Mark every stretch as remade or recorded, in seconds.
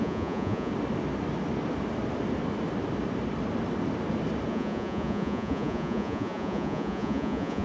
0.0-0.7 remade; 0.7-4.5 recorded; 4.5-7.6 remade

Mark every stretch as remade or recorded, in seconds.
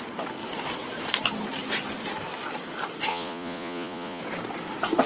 0.0-3.1 recorded; 3.1-4.2 remade; 4.2-5.1 recorded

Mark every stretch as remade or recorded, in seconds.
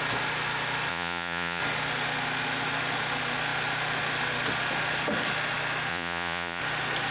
0.0-0.9 recorded; 0.9-1.6 remade; 1.6-5.9 recorded; 5.9-6.6 remade; 6.6-7.1 recorded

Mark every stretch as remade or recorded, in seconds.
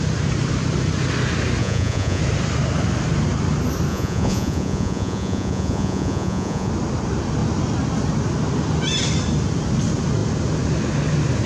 0.0-1.6 recorded; 1.6-2.2 remade; 2.2-3.9 recorded; 3.9-6.7 remade; 6.7-11.5 recorded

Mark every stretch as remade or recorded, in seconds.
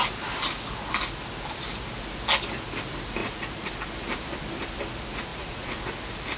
0.0-3.2 recorded; 3.2-3.7 remade; 3.7-5.3 recorded; 5.3-5.8 remade; 5.8-6.4 recorded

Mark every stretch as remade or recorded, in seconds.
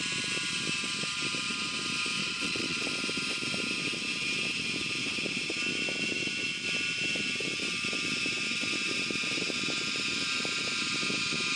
0.0-2.2 recorded; 2.2-2.9 remade; 2.9-11.6 recorded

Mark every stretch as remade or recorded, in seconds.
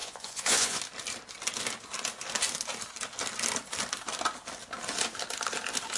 0.0-0.8 remade; 0.8-6.0 recorded